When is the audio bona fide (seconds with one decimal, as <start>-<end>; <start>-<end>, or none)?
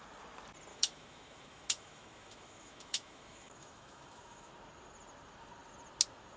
0.0-0.7; 4.5-6.4